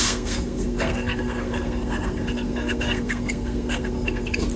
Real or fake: fake